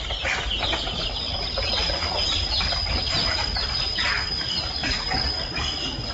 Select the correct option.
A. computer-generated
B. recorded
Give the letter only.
B